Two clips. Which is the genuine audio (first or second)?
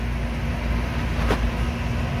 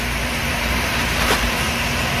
first